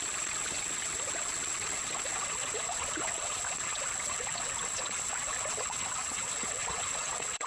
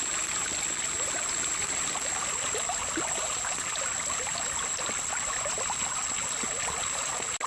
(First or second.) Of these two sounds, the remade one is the first